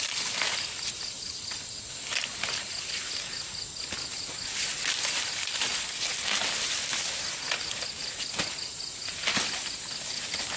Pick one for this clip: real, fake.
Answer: real